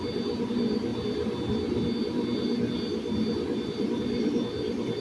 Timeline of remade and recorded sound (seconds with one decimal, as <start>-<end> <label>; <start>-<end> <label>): 0.0-0.9 remade; 0.9-3.8 recorded; 3.8-5.0 remade

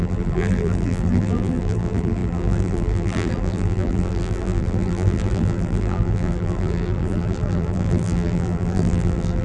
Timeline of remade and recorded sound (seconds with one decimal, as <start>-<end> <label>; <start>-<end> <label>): 0.0-9.4 remade

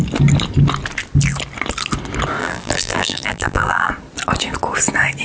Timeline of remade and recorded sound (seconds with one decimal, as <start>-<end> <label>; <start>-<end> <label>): 0.0-2.4 recorded; 2.4-3.9 remade; 3.9-5.2 recorded

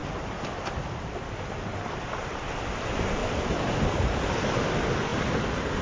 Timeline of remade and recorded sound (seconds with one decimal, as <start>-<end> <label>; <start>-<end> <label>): 0.0-3.2 recorded; 3.2-4.6 remade; 4.6-5.8 recorded

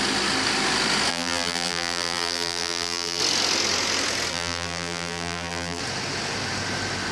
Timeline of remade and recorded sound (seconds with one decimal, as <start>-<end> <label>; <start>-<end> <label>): 0.0-1.1 recorded; 1.1-3.2 remade; 3.2-4.3 recorded; 4.3-5.8 remade; 5.8-7.1 recorded

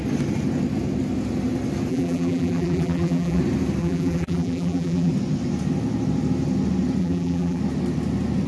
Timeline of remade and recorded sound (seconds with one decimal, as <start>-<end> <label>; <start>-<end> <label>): 0.0-1.9 recorded; 1.9-3.4 remade; 3.4-3.8 recorded; 3.8-5.1 remade; 5.1-7.0 recorded; 7.0-7.6 remade; 7.6-8.5 recorded

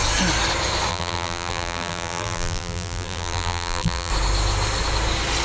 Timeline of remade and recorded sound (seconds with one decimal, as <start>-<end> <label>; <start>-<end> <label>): 0.0-0.9 recorded; 0.9-4.1 remade; 4.1-5.4 recorded